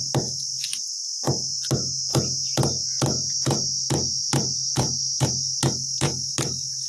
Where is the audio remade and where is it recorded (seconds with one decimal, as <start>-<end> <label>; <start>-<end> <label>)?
0.0-6.9 recorded